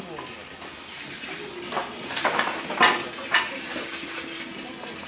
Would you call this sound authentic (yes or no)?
yes